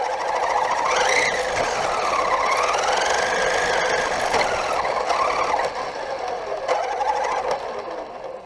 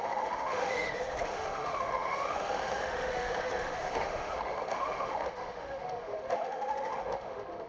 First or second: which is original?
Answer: first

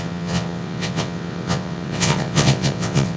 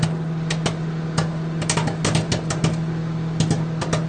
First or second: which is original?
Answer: second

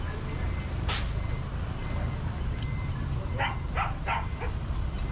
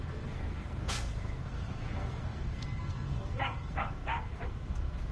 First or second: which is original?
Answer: first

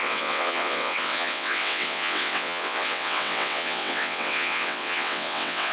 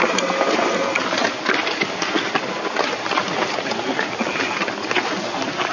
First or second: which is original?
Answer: second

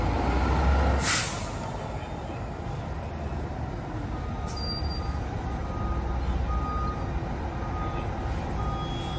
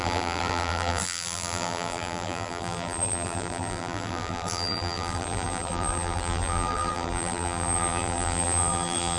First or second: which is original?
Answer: first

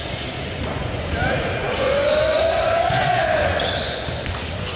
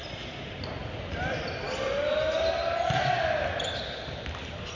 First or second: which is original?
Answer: second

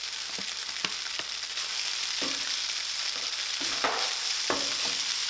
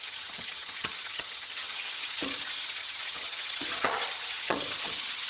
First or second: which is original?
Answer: first